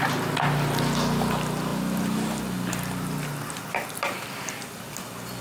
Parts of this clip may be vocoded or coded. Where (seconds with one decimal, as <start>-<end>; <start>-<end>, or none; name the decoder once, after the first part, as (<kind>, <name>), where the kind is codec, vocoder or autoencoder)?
none